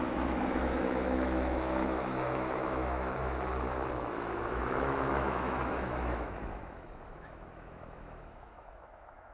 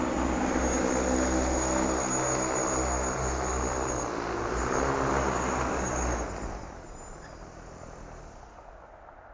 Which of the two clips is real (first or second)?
second